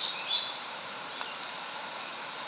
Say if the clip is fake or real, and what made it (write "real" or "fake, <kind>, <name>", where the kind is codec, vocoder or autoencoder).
fake, vocoder, BigVGAN v2